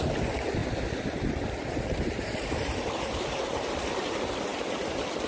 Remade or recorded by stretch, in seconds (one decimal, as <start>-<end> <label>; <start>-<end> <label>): 0.0-0.6 recorded; 0.6-3.8 remade; 3.8-5.3 recorded